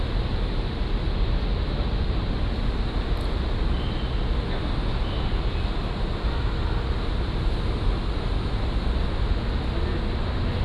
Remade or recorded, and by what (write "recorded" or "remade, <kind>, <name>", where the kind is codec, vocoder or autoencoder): recorded